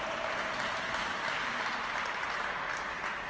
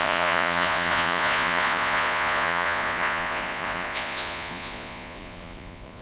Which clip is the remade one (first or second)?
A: second